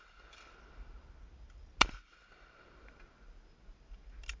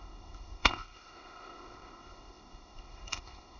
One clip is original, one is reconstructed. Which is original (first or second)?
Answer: first